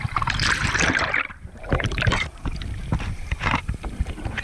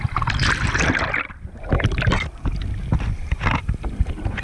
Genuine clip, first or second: second